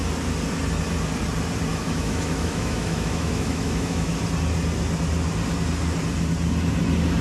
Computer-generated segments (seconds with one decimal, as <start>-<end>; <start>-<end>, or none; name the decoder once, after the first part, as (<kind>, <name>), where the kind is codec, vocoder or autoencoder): 1.7-4.1 (autoencoder, DAC-VAE)